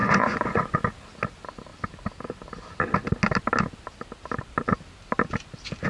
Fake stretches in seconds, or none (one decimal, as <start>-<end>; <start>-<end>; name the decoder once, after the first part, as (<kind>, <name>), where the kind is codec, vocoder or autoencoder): 0.0-0.8 (vocoder, Vocos)